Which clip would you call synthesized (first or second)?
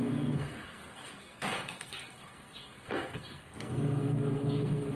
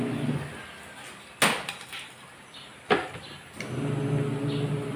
first